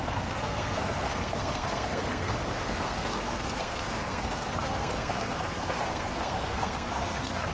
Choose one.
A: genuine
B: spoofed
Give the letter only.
B